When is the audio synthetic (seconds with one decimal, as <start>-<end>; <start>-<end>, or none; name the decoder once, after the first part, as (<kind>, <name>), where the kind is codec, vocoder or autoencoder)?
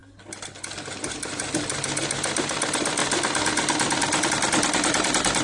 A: 0.0-5.4 (vocoder, BigVGAN v2)